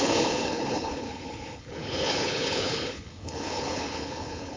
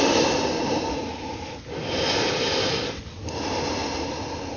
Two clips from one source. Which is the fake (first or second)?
first